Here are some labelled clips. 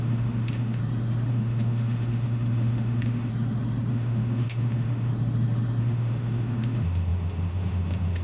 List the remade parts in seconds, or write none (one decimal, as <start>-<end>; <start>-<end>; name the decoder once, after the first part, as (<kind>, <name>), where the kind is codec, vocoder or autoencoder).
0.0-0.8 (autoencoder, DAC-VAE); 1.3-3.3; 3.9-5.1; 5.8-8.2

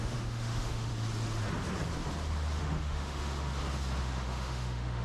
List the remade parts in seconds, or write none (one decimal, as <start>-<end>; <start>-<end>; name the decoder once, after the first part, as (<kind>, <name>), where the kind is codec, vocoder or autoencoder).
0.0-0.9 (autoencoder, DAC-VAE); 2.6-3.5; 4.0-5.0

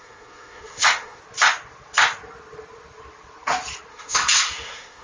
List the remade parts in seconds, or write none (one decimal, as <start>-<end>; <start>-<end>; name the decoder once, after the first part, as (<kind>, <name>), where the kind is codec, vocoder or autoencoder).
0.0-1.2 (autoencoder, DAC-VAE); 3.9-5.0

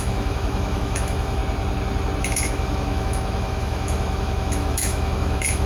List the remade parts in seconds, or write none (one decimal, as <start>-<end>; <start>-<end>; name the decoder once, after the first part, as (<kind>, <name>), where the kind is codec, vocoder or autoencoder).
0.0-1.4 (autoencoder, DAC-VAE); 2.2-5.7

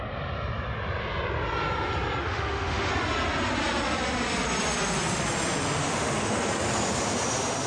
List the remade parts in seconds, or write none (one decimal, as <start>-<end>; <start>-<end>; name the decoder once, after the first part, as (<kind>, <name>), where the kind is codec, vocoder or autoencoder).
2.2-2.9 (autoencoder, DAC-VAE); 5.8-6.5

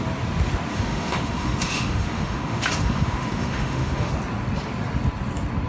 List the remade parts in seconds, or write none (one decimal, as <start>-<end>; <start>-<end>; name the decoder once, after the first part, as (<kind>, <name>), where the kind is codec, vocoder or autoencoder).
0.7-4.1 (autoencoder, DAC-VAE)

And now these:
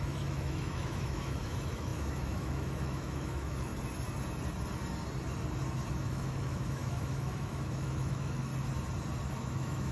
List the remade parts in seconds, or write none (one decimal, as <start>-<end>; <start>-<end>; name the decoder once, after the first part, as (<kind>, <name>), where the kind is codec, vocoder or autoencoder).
0.0-3.7 (autoencoder, DAC-VAE); 5.9-8.5; 9.3-9.9

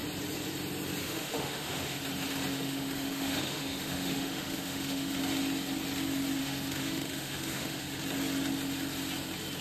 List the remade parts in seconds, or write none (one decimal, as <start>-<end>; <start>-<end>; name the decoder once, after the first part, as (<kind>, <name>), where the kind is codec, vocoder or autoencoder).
1.0-2.0 (autoencoder, DAC-VAE); 2.5-5.2; 6.4-8.0